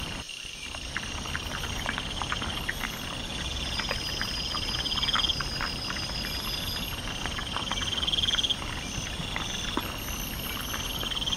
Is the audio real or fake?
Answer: real